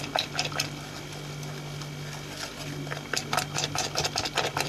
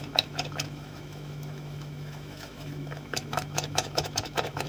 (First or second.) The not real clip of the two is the second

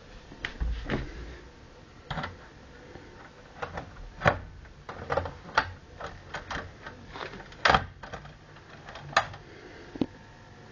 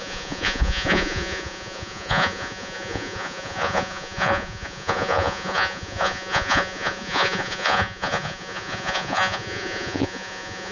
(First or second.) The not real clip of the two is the second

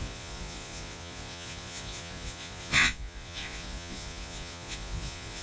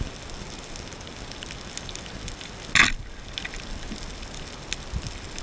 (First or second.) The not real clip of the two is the first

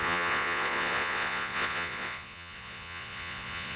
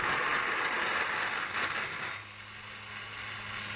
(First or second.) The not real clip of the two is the first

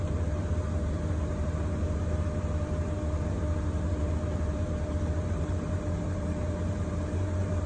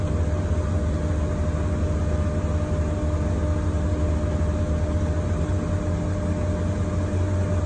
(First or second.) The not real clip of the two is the first